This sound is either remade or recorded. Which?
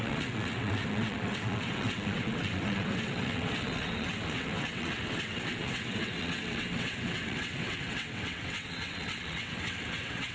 remade